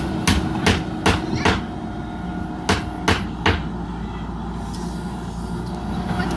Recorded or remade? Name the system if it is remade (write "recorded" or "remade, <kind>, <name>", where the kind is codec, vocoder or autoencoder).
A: recorded